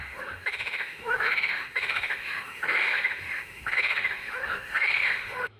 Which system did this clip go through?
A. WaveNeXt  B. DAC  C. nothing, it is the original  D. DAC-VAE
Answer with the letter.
D